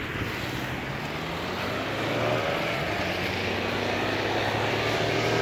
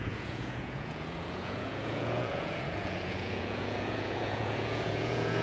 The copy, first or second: second